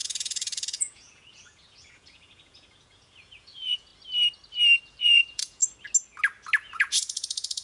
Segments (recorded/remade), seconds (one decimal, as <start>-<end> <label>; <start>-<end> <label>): 0.0-3.9 remade; 3.9-5.0 recorded; 5.0-5.6 remade; 5.6-6.6 recorded; 6.6-7.6 remade